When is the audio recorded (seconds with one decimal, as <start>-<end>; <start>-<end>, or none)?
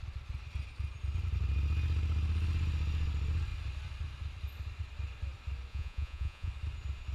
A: 0.0-5.7; 6.5-7.1